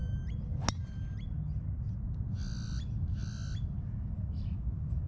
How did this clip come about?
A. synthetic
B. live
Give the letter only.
B